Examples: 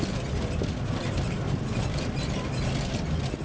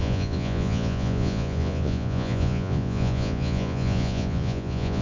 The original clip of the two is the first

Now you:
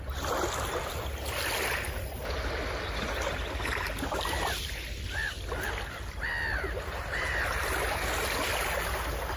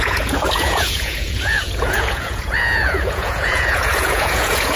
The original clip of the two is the first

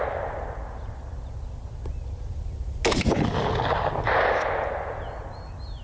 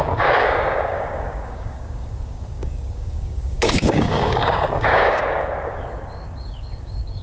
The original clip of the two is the first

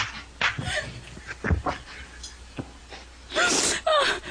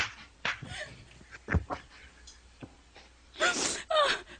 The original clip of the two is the first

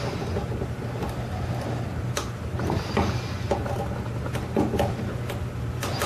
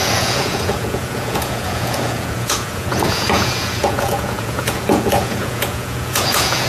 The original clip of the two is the first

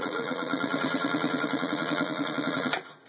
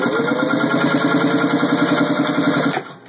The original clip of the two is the second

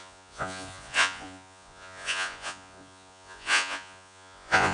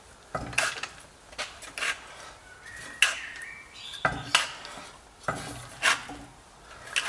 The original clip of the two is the second